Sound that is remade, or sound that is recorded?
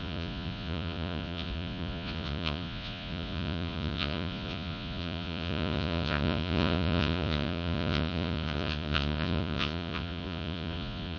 remade